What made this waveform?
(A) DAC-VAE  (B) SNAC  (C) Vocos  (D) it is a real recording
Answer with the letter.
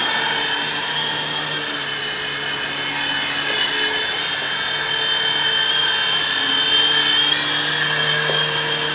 D